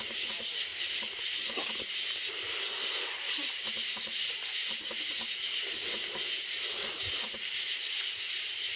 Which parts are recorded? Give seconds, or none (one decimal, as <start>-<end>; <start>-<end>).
0.7-2.3